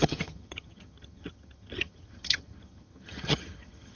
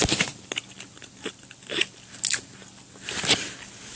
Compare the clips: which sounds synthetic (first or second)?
first